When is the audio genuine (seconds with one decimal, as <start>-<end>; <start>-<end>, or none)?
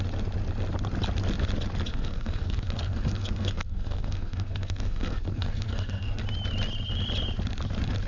0.0-1.9; 6.2-8.1